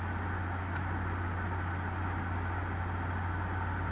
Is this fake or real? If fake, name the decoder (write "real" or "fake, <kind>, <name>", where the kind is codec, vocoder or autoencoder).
real